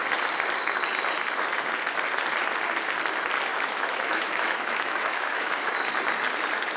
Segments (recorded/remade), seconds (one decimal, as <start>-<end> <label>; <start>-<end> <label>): 0.0-3.5 recorded; 3.5-6.0 remade; 6.0-6.8 recorded